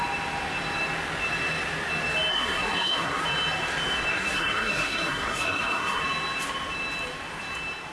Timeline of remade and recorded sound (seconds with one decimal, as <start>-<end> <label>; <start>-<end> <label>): 0.0-2.3 recorded; 2.3-3.2 remade; 3.2-4.1 recorded; 4.1-6.0 remade; 6.0-7.9 recorded